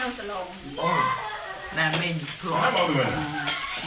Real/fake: real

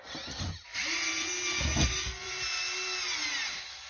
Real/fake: real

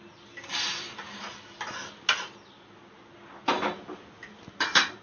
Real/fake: real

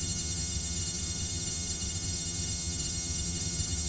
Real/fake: fake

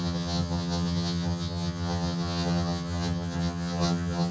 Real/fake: fake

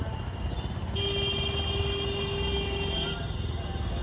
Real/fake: real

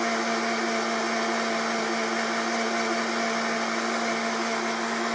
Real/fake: real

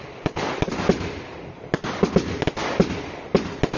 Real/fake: real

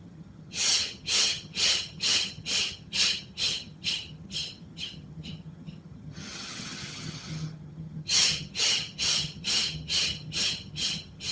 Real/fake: fake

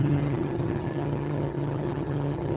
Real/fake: fake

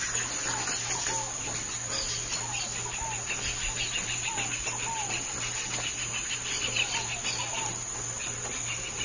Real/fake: real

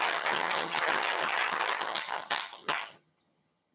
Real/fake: fake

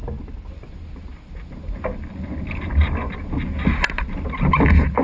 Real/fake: real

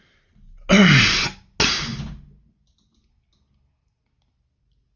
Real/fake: real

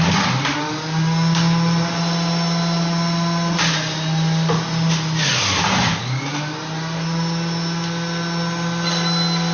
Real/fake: real